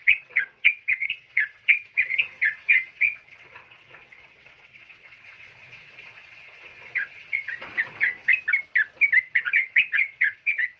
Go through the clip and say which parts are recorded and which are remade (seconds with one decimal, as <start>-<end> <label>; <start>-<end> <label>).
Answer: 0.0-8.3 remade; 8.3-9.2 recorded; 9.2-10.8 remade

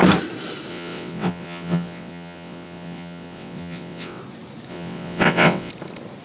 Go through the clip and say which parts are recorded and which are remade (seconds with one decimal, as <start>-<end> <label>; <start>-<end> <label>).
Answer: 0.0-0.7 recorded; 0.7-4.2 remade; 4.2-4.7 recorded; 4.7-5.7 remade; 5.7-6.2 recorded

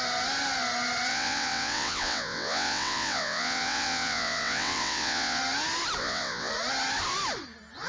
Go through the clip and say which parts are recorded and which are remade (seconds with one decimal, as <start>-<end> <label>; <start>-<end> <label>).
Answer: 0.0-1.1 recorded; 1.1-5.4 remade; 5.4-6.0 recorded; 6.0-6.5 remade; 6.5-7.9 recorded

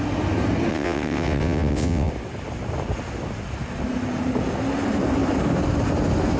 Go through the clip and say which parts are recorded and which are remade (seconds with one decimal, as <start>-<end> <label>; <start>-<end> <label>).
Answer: 0.0-0.7 recorded; 0.7-2.1 remade; 2.1-6.4 recorded

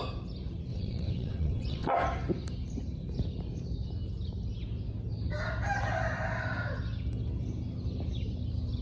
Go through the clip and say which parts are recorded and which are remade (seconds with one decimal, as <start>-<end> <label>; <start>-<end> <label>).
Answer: 0.0-0.7 recorded; 0.7-1.9 remade; 1.9-8.8 recorded